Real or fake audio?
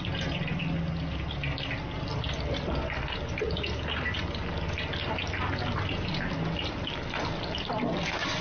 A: real